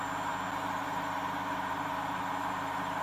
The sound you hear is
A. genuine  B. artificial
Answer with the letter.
A